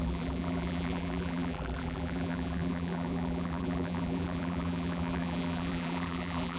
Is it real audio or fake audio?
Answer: fake